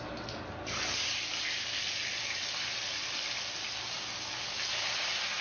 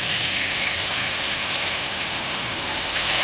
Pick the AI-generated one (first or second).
second